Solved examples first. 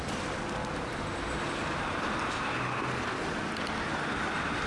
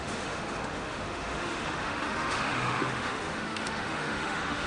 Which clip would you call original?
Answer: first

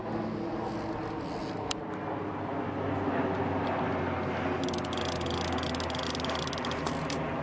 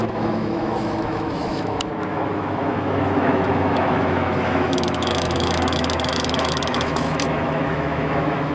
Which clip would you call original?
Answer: first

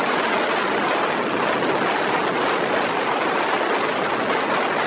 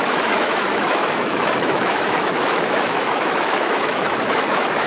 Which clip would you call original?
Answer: first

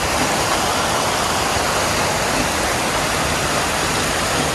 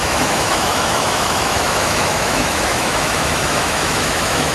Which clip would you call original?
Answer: first